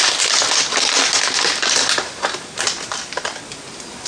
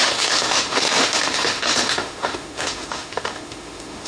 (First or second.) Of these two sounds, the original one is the first